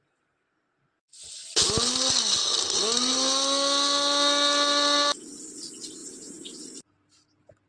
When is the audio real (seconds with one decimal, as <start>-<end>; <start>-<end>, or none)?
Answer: 0.0-6.0; 6.6-7.7